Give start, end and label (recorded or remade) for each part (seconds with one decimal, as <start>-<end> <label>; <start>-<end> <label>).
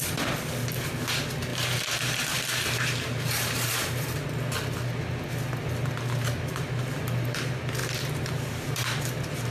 0.0-1.5 recorded; 1.5-3.7 remade; 3.7-7.8 recorded; 7.8-8.7 remade; 8.7-9.5 recorded